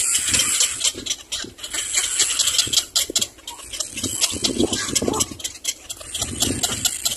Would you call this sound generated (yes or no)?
no